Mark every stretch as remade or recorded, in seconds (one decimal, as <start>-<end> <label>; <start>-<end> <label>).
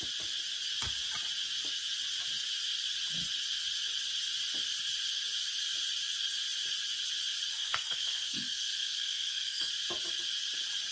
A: 0.0-7.5 recorded; 7.5-9.7 remade; 9.7-10.9 recorded